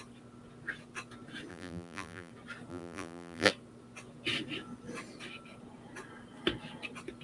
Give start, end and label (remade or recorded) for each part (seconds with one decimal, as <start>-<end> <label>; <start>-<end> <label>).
0.0-1.5 recorded; 1.5-2.3 remade; 2.3-2.7 recorded; 2.7-3.5 remade; 3.5-7.2 recorded